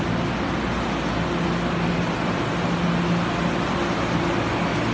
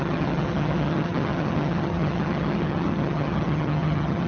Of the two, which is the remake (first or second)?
second